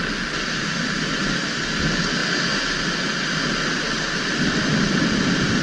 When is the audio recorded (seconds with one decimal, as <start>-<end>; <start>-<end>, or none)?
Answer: 0.0-5.6

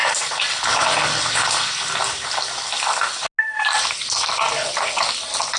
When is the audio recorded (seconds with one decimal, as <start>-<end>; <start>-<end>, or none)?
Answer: 0.0-5.6

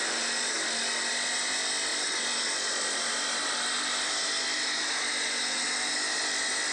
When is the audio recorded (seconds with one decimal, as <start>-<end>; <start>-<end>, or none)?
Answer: 0.0-6.7

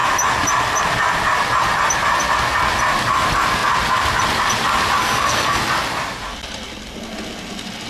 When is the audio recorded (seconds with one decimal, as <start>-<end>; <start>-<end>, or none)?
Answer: 0.0-5.0; 5.6-7.9